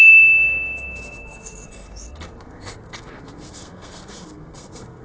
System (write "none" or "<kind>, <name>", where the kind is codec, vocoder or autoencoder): codec, SNAC